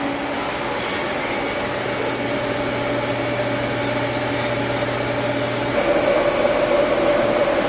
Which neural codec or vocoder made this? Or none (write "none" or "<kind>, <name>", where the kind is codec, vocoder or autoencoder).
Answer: none